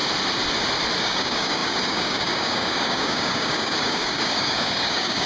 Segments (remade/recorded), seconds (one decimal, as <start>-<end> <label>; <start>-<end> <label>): 0.0-1.0 recorded; 1.0-5.3 remade